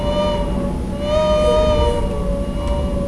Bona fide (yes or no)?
yes